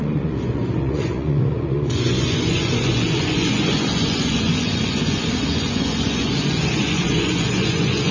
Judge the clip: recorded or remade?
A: remade